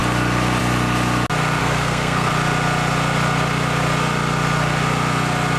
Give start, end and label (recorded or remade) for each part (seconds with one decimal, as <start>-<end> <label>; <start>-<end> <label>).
0.0-1.6 recorded; 1.6-2.3 remade; 2.3-5.6 recorded